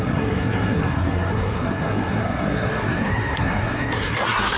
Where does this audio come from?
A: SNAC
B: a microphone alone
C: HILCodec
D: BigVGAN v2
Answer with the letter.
A